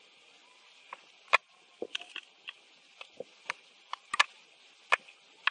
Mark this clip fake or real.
real